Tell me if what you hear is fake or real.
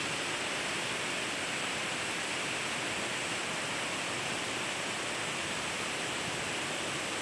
real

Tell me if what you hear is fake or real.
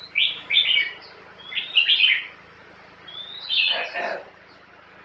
real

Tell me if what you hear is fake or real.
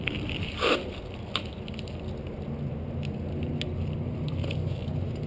real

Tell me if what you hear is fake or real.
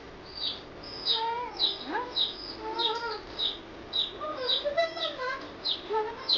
real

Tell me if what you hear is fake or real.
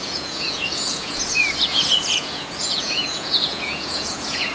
fake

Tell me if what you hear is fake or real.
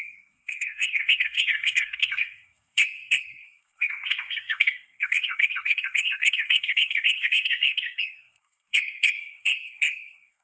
fake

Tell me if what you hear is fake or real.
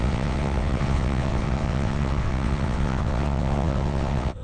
fake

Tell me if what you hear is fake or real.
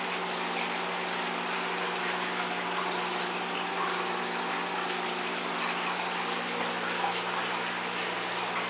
real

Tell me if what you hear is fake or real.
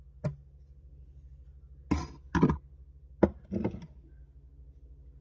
real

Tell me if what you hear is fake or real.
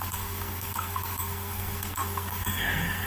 fake